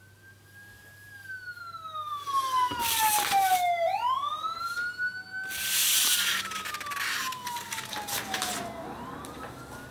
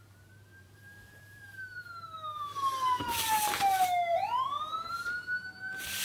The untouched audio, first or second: first